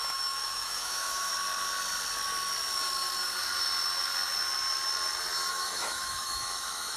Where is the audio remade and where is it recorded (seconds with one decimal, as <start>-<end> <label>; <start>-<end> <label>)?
0.0-1.3 remade; 1.3-5.5 recorded; 5.5-7.0 remade